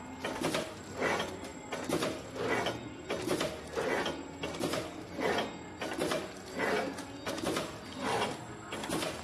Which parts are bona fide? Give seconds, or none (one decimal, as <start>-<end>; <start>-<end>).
0.0-9.2

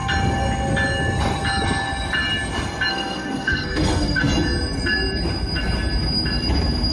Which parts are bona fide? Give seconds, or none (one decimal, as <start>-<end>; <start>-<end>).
0.0-2.9; 4.2-6.9

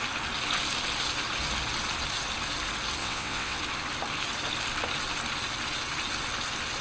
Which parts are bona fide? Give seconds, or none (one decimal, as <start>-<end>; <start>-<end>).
0.0-3.0; 3.6-6.8